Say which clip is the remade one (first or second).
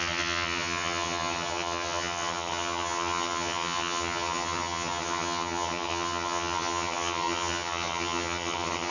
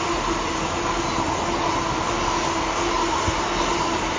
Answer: first